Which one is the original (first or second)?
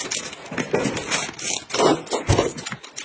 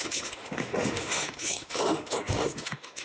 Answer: first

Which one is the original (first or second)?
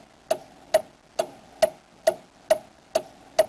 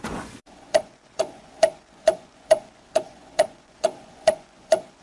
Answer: first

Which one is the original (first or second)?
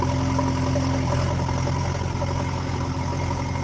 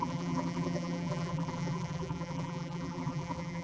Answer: first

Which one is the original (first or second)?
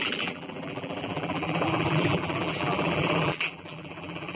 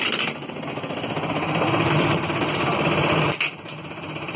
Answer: second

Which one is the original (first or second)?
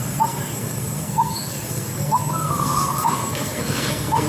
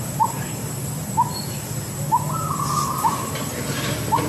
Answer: second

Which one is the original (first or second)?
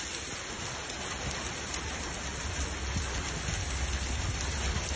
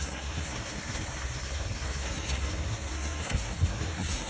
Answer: first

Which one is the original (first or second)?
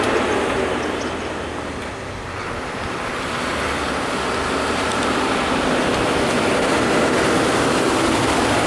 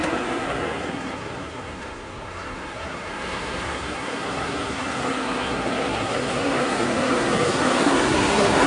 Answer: first